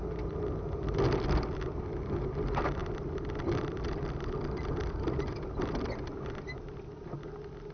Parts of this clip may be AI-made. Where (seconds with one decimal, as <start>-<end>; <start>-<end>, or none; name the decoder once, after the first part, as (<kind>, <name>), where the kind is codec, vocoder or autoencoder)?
none